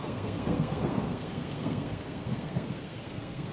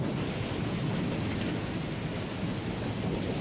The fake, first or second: first